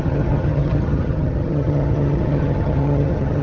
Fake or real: fake